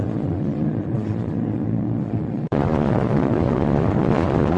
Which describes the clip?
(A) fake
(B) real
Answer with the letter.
A